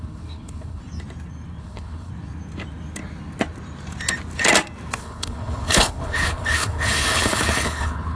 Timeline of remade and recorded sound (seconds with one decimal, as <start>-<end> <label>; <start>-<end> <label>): 0.0-0.8 remade; 0.8-1.6 recorded; 1.6-2.1 remade; 2.1-5.0 recorded; 5.0-8.2 remade